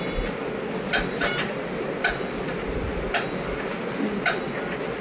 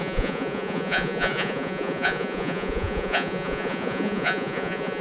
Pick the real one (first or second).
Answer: first